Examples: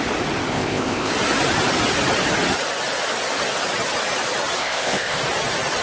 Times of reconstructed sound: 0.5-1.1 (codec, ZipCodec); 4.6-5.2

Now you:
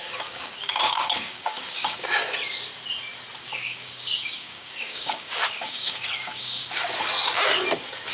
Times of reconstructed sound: 0.0-2.2 (codec, DAC); 3.4-6.6

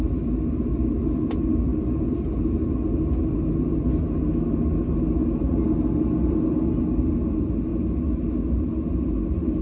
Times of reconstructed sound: none

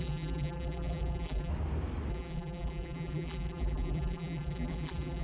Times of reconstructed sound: 0.0-1.5 (vocoder, BigVGAN v2); 2.1-5.2

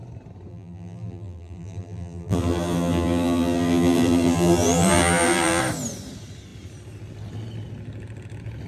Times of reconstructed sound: 0.5-5.6 (vocoder, BigVGAN v2)